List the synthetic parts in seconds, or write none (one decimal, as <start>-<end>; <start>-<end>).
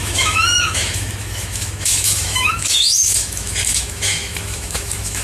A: 0.0-5.2